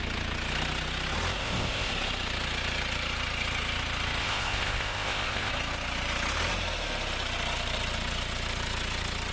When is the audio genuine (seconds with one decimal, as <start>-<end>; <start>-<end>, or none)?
0.0-1.4; 1.9-4.2; 5.5-9.3